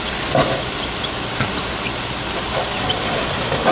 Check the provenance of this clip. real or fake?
real